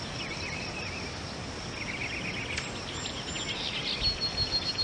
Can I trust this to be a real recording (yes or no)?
yes